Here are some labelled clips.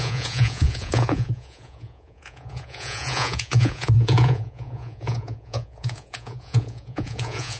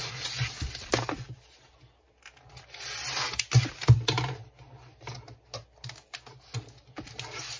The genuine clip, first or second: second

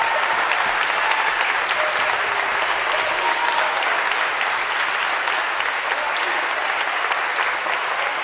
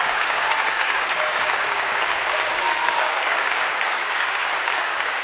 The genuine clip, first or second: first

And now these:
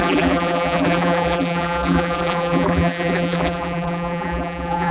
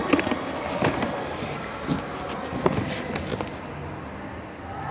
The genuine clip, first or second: second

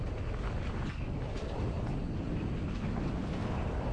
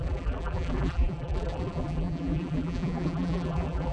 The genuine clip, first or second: first